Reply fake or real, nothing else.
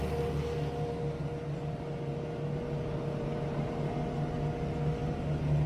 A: real